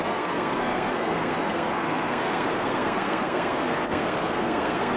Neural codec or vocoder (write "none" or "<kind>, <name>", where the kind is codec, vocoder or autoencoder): codec, SNAC